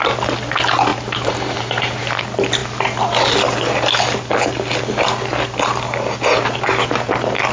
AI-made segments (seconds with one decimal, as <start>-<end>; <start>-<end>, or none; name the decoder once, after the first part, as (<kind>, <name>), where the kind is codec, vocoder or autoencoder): 0.9-2.0 (vocoder, BigVGAN v2)